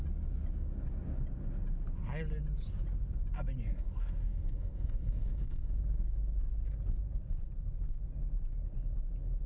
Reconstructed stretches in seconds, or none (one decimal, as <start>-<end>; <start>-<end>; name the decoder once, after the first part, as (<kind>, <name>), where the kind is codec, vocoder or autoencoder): 3.7-5.7 (codec, SNAC)